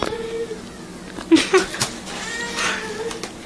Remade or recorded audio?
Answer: recorded